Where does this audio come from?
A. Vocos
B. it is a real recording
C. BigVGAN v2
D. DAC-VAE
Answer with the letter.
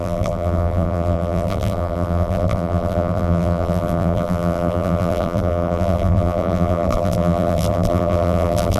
C